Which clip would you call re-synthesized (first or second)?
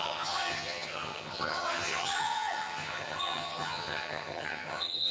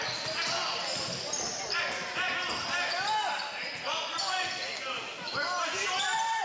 first